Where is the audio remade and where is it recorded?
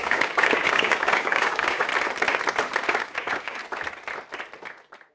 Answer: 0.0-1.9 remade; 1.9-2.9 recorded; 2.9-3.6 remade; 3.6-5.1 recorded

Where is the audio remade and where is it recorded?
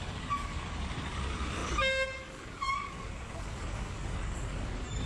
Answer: 0.0-5.1 remade